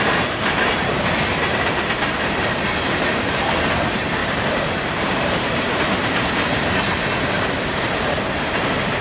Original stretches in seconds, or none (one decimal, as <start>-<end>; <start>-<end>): 0.0-1.4; 3.5-4.2; 8.6-9.0